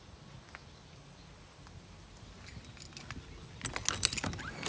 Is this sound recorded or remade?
recorded